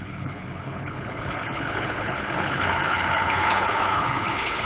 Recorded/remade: remade